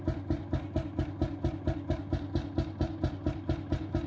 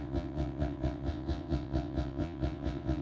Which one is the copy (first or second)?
second